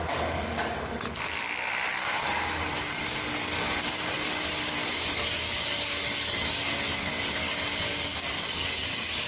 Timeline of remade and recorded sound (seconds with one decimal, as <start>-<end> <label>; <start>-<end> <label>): 0.0-1.3 remade; 1.3-1.9 recorded; 1.9-9.3 remade